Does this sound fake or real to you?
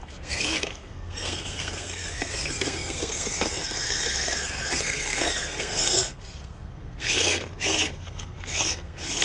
fake